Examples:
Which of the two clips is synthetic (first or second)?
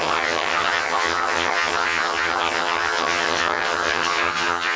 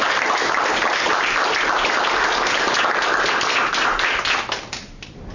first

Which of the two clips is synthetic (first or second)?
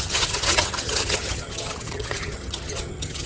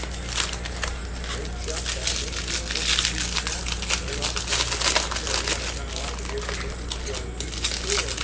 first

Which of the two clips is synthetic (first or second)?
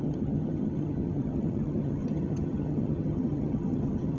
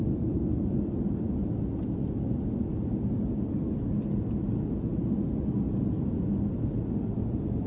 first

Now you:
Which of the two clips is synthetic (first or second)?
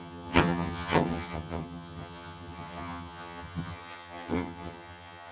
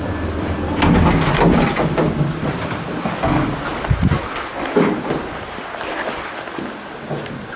first